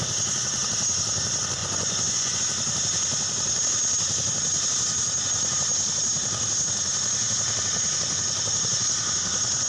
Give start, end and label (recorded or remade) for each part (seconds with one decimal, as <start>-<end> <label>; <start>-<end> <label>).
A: 0.0-1.6 recorded; 1.6-2.4 remade; 2.4-9.7 recorded